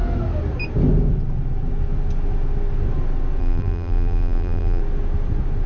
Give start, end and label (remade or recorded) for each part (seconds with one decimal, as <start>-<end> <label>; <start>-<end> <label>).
0.0-3.4 recorded; 3.4-4.8 remade; 4.8-5.7 recorded